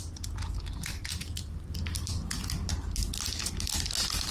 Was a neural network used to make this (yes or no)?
no